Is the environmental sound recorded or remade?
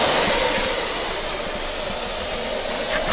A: recorded